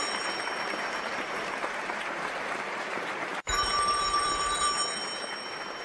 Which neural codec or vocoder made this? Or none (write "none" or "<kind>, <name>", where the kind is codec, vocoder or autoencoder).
vocoder, BigVGAN v2